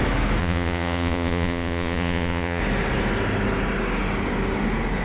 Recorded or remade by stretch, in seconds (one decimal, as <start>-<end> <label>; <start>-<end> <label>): 0.0-0.4 recorded; 0.4-2.6 remade; 2.6-5.0 recorded